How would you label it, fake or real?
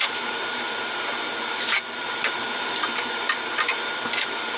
fake